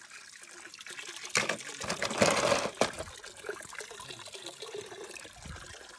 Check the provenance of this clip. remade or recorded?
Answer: recorded